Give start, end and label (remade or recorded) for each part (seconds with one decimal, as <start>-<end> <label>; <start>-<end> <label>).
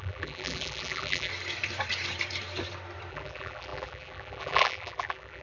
0.0-1.3 remade; 1.3-3.1 recorded; 3.1-5.4 remade